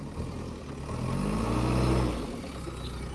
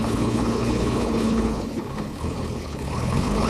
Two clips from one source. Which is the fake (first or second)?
second